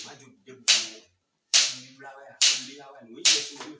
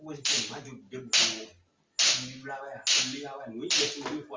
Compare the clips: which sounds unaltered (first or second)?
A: second